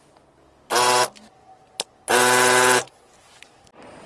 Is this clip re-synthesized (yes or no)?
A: no